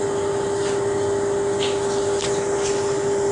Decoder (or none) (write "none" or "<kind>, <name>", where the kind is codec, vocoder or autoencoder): none